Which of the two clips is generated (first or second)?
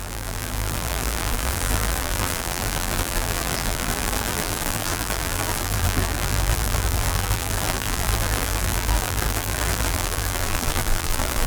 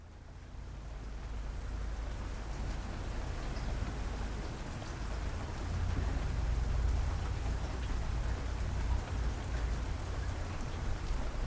first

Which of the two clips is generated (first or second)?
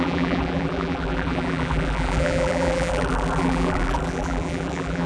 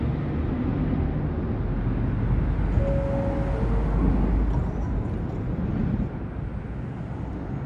first